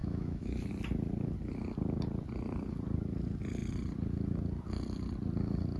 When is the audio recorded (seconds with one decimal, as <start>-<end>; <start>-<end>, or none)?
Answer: 0.7-5.8

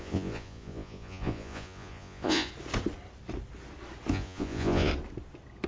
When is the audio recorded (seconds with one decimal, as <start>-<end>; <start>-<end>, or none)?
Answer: 2.5-4.1; 4.9-5.7

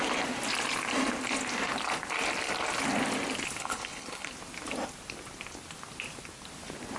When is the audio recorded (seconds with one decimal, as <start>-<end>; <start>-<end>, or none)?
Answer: 0.0-3.6; 4.3-7.0

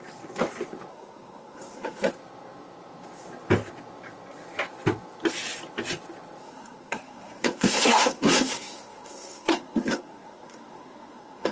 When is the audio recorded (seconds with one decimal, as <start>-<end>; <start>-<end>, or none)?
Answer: 0.0-0.9; 2.1-6.4

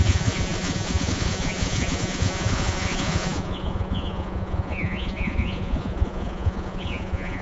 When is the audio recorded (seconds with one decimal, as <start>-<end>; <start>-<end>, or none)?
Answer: none

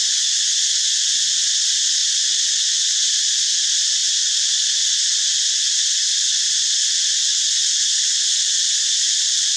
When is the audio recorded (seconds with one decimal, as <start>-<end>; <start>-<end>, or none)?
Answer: 0.0-9.6

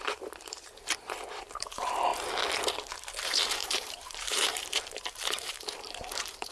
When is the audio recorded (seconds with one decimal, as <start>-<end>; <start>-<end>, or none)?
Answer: 2.1-3.2